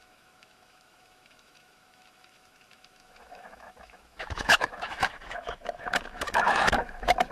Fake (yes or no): yes